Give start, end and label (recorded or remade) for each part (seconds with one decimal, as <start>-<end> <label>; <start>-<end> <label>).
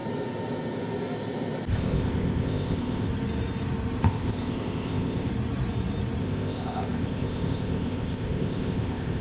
0.0-1.7 recorded; 1.7-3.1 remade; 3.1-4.0 recorded; 4.0-5.3 remade; 5.3-6.2 recorded; 6.2-9.2 remade